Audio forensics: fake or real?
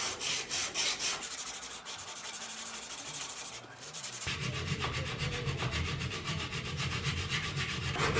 fake